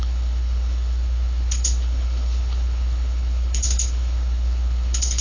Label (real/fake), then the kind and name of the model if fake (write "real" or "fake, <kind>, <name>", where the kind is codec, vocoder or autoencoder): fake, codec, HILCodec